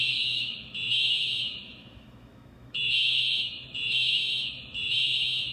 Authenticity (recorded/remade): remade